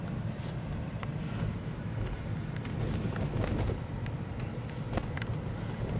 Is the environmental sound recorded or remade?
recorded